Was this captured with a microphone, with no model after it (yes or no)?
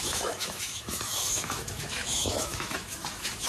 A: no